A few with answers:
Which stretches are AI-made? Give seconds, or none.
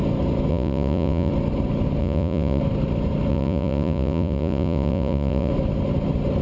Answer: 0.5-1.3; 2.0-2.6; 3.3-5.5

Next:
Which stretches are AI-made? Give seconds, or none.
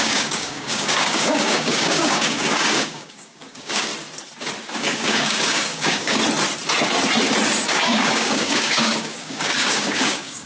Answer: 0.0-3.9; 4.8-6.2; 7.7-10.5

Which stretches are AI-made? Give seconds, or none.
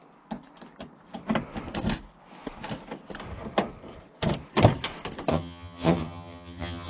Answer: 5.3-6.9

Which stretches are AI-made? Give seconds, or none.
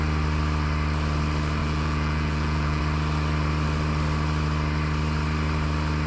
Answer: 1.6-2.8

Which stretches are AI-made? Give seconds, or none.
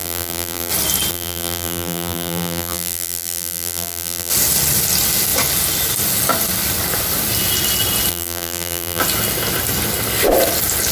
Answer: 0.0-0.7; 1.1-4.3; 8.1-9.0